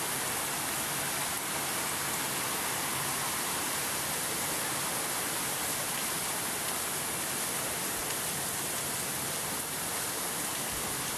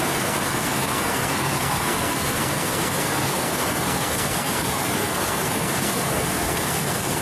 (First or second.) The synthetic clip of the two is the second